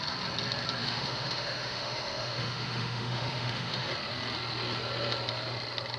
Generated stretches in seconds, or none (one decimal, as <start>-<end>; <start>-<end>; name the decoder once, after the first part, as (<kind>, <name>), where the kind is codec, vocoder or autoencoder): 0.8-3.9 (autoencoder, DAC-VAE)